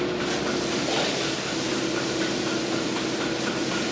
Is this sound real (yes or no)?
yes